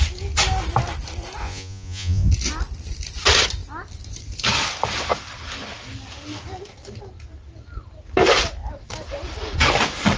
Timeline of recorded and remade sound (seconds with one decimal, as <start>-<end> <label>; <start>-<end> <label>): 0.0-1.4 recorded; 1.4-2.3 remade; 2.3-10.2 recorded